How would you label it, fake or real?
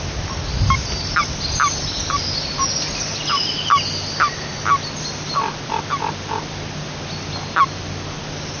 real